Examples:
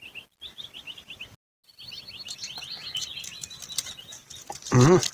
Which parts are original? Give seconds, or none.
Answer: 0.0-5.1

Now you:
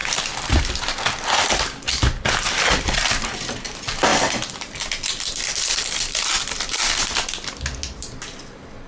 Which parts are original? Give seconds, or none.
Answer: 0.7-1.9; 2.7-4.1; 6.4-8.9